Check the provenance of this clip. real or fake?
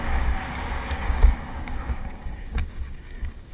fake